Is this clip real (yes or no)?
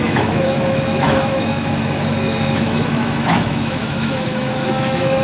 no